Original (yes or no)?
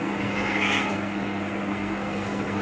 no